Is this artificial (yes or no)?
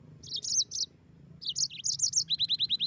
no